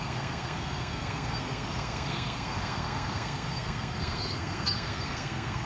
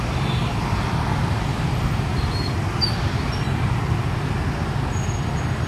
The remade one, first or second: first